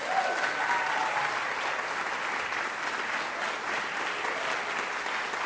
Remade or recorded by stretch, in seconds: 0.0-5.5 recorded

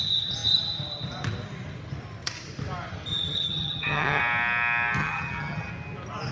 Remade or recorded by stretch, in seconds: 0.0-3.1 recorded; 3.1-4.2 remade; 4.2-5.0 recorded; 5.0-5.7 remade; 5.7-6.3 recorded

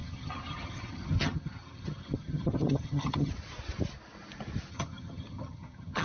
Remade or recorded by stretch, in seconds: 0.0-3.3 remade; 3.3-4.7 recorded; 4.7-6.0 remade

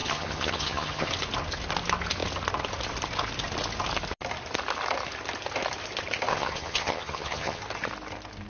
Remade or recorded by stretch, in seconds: 0.0-1.1 remade; 1.1-6.3 recorded; 6.3-7.6 remade; 7.6-8.5 recorded

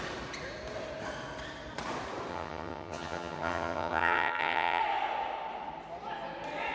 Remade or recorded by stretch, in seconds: 0.0-2.3 recorded; 2.3-4.8 remade; 4.8-6.7 recorded

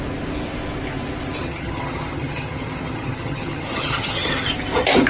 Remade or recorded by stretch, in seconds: 0.0-1.4 recorded; 1.4-4.5 remade; 4.5-5.1 recorded